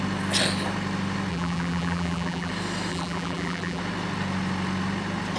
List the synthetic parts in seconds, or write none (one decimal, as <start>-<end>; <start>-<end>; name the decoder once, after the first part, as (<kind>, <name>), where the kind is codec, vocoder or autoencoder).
1.3-2.5 (vocoder, BigVGAN v2); 2.9-3.8